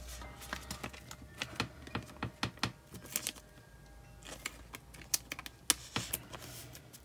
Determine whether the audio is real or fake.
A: real